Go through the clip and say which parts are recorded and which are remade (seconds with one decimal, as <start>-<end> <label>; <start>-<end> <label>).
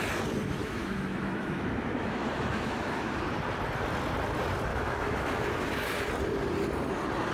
0.0-0.6 recorded; 0.6-3.1 remade; 3.1-4.7 recorded; 4.7-6.1 remade; 6.1-7.3 recorded